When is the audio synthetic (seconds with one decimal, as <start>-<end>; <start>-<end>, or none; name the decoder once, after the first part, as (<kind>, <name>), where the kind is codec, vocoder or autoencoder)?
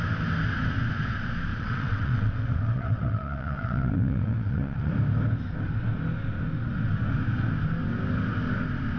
1.5-4.9 (vocoder, WaveNeXt)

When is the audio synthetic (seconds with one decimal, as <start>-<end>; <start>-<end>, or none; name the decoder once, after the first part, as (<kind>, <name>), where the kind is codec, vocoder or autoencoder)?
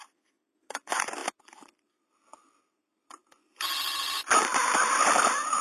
4.5-5.6 (vocoder, BigVGAN v2)